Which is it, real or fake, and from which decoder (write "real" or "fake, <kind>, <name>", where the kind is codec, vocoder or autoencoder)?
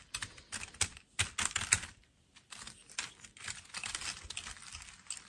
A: real